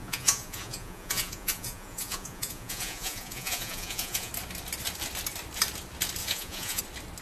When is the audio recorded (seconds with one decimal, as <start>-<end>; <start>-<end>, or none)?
4.3-6.2; 6.8-7.2